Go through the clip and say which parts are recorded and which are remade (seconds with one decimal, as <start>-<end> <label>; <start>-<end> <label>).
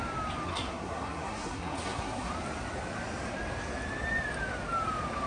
0.0-0.5 recorded; 0.5-2.3 remade; 2.3-5.3 recorded